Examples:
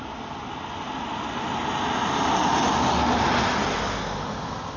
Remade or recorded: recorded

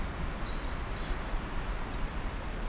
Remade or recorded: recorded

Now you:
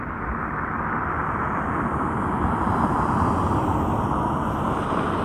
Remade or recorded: recorded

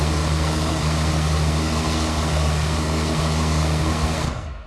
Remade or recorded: remade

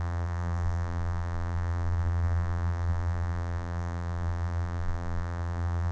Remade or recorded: remade